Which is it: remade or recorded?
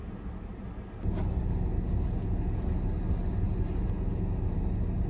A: recorded